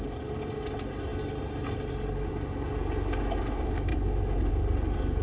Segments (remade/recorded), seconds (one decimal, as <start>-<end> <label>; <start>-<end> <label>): 0.0-5.2 recorded